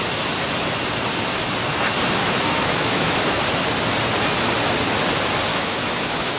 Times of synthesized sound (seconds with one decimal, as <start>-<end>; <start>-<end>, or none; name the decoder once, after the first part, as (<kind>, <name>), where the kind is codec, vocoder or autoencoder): 2.2-3.4 (autoencoder, DAC-VAE); 5.5-6.4